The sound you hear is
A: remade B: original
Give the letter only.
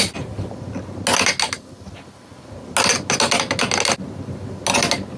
B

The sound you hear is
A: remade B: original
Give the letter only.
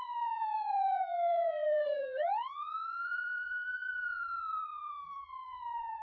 A